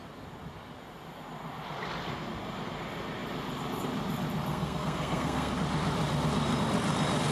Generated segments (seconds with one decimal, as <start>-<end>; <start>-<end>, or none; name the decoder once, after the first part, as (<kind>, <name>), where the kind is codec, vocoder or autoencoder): 4.5-5.5 (codec, SNAC)